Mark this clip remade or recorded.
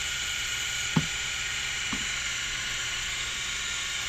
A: remade